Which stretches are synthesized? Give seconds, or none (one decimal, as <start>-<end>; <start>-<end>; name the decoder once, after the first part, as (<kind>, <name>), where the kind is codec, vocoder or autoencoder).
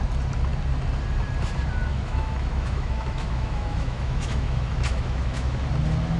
1.9-5.6 (autoencoder, DAC-VAE)